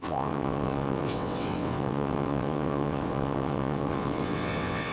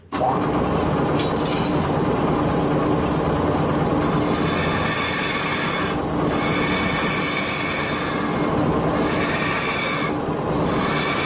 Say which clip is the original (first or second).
second